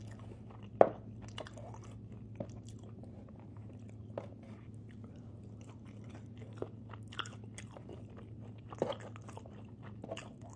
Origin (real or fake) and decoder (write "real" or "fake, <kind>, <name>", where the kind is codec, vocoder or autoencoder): real